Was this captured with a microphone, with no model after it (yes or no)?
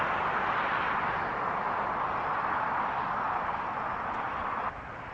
yes